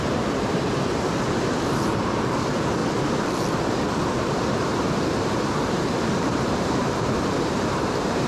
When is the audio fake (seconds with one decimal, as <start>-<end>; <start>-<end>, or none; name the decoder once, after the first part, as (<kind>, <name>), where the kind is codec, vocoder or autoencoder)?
0.0-2.8 (vocoder, BigVGAN v2); 5.6-8.3

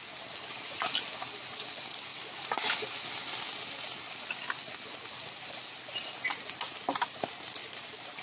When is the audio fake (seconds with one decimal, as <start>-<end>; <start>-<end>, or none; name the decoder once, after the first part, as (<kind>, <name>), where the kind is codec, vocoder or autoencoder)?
2.1-2.7 (vocoder, BigVGAN v2); 7.6-8.2

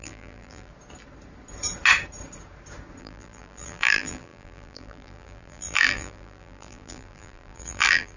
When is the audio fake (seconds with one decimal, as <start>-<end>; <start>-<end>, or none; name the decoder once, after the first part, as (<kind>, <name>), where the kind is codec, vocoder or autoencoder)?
0.0-0.7 (vocoder, BigVGAN v2); 3.0-8.2

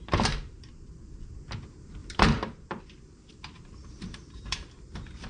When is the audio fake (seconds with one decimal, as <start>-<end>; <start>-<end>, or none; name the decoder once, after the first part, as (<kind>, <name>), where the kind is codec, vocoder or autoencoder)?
0.0-0.7 (vocoder, BigVGAN v2); 2.0-2.8; 3.8-4.7

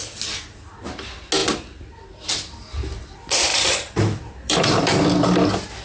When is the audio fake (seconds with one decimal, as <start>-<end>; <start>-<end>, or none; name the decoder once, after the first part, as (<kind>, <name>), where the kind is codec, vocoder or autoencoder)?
3.5-4.8 (vocoder, BigVGAN v2)

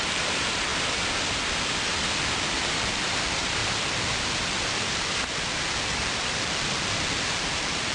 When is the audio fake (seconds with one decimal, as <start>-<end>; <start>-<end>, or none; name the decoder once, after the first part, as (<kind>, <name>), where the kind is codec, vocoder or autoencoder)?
0.0-0.7 (vocoder, BigVGAN v2); 2.4-3.6; 5.9-7.9

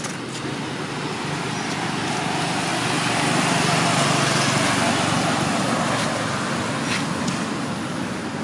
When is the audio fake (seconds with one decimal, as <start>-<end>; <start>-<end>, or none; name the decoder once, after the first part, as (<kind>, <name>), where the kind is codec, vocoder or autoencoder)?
none